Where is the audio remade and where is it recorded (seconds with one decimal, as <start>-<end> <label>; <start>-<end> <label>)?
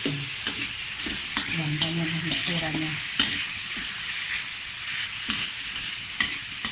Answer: 0.0-1.2 recorded; 1.2-1.8 remade; 1.8-6.7 recorded